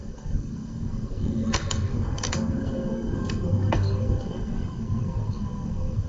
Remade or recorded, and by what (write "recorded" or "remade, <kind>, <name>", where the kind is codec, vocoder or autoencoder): remade, codec, SNAC